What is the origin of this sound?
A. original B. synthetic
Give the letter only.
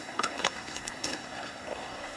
B